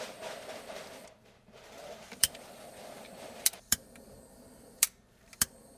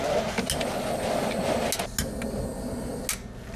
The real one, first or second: second